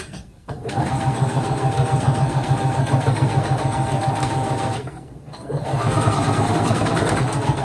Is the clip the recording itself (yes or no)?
no